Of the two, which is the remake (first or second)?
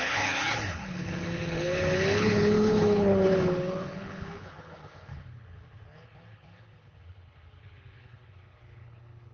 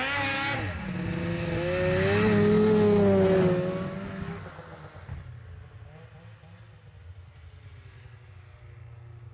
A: first